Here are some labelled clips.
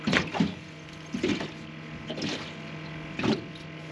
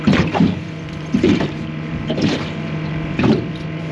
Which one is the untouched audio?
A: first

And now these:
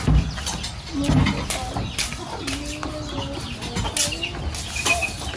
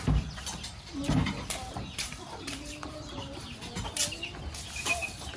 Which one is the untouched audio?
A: first